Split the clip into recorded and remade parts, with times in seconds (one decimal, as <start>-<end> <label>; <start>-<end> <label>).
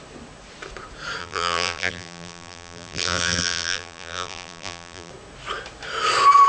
0.0-1.2 recorded; 1.2-5.1 remade; 5.1-6.5 recorded